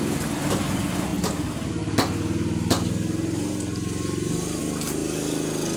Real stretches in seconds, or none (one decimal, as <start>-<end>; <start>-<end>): 0.0-5.8